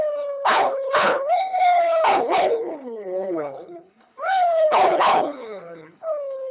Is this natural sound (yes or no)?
no